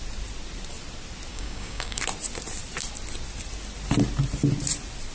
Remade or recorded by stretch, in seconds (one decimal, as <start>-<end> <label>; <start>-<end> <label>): 0.0-1.3 recorded; 1.3-2.0 remade; 2.0-5.1 recorded